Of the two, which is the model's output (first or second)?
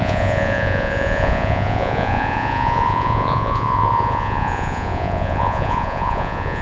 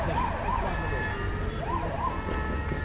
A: first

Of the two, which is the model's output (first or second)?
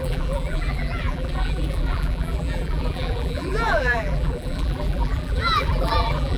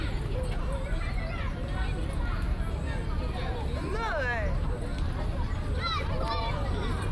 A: first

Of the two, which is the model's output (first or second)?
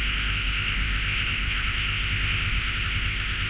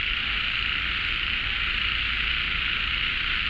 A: first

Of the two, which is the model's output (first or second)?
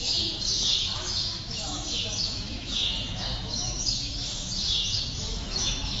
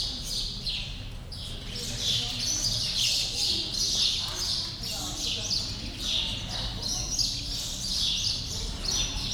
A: first